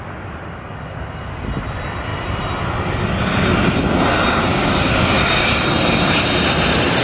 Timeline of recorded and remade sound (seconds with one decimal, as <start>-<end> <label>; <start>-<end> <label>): 0.0-4.5 recorded; 4.5-5.5 remade; 5.5-7.0 recorded